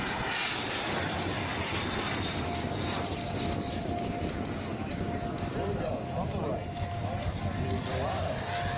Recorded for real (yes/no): yes